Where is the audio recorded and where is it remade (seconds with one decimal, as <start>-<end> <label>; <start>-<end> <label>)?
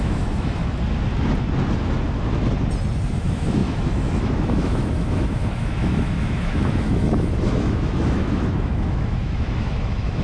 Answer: 0.0-0.6 remade; 0.6-3.1 recorded; 3.1-10.2 remade